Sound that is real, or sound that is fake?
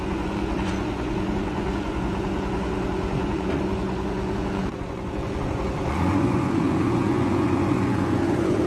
fake